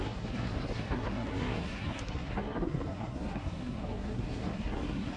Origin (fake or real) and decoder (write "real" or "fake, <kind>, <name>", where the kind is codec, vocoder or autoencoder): fake, codec, SNAC